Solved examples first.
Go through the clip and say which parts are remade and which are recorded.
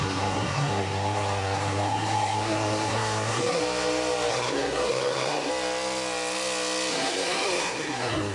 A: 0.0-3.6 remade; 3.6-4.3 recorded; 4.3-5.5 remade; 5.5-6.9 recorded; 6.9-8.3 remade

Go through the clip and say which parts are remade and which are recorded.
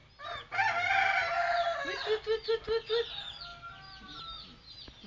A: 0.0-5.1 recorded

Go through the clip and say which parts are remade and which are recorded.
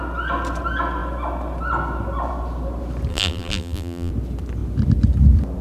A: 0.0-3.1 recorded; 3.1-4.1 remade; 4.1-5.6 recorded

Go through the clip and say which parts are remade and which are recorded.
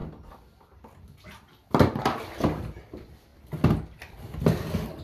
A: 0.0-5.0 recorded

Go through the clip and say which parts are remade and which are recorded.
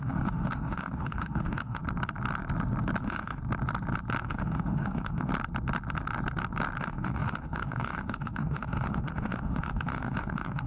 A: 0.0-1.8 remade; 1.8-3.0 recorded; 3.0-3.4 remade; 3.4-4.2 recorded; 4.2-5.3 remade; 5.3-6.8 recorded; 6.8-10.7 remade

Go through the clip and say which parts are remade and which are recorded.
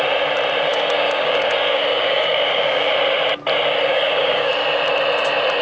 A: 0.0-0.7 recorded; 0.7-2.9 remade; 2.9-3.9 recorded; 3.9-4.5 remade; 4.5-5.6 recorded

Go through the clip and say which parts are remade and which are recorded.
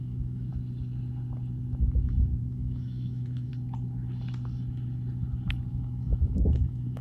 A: 0.0-0.5 remade; 0.5-2.4 recorded; 2.4-3.5 remade; 3.5-5.7 recorded; 5.7-7.0 remade